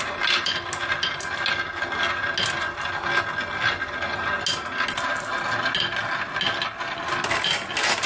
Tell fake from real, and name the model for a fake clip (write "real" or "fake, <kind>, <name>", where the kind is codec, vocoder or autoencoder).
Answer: real